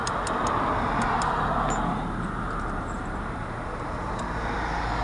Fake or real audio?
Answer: real